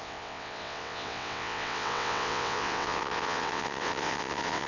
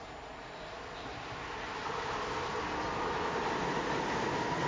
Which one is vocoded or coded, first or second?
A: first